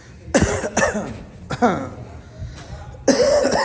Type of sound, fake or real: real